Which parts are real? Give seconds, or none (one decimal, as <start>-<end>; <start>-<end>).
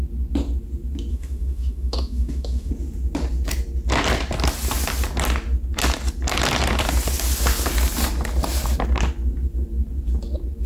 0.0-1.1; 2.7-10.7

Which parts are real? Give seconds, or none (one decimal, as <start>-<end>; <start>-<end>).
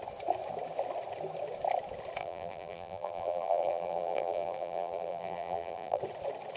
0.0-2.2; 6.0-6.6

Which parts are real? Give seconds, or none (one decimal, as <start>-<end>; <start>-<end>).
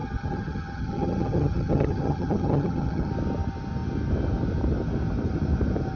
3.1-6.0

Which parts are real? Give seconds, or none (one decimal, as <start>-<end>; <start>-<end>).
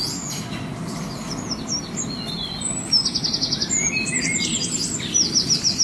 0.0-5.8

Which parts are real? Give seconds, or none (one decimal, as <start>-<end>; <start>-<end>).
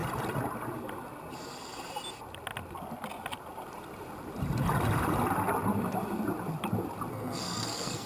0.0-7.1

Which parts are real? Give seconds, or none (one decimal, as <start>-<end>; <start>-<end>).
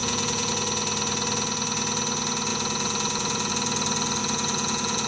0.5-2.5; 3.5-4.2